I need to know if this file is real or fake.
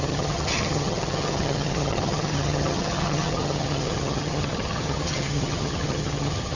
fake